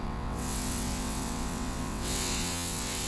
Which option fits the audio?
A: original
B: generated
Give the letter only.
B